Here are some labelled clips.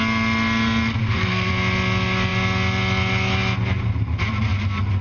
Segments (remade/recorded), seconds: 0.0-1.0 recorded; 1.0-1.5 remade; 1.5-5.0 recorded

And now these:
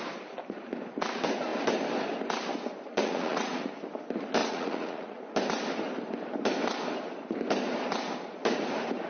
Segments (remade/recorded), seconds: 0.0-2.9 recorded; 2.9-3.7 remade; 3.7-4.4 recorded; 4.4-5.2 remade; 5.2-9.1 recorded

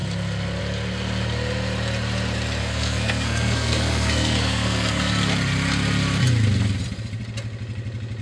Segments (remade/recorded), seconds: 0.0-2.6 recorded; 2.6-5.1 remade; 5.1-8.2 recorded

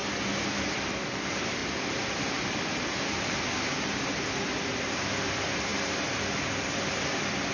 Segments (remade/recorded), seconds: 0.0-5.7 remade; 5.7-6.8 recorded; 6.8-7.5 remade

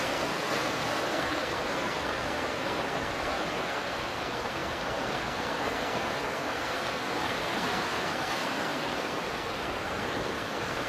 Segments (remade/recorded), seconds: 0.0-10.9 remade

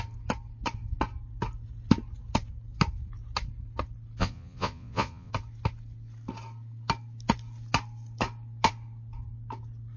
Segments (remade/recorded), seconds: 0.0-4.2 recorded; 4.2-5.3 remade; 5.3-10.0 recorded